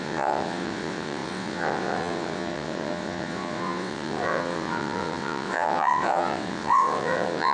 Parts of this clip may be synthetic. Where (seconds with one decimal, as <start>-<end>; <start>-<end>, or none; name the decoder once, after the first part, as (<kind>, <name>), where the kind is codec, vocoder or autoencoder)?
0.0-7.5 (vocoder, WaveNeXt)